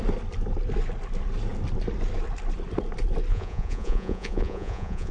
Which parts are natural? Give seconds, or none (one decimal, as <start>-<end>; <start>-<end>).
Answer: 0.0-3.3